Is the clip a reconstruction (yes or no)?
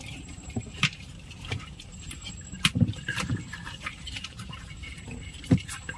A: yes